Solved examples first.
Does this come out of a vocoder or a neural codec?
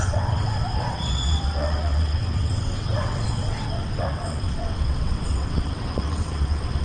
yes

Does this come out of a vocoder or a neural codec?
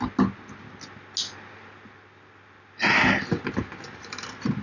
no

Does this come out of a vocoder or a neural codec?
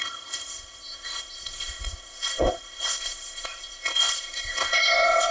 yes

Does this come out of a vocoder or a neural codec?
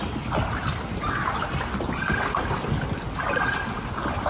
no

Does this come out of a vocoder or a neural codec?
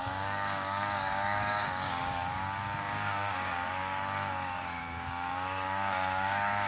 yes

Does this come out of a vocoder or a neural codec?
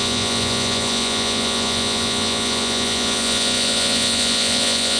yes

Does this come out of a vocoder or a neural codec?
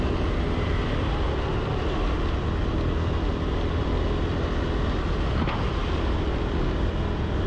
no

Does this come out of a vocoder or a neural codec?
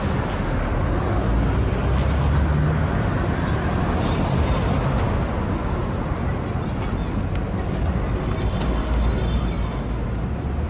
no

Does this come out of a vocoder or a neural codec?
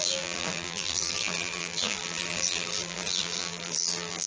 yes